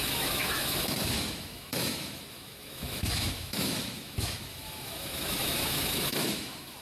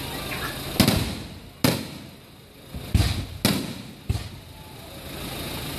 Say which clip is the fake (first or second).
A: first